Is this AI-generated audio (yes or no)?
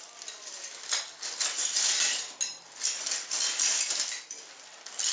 no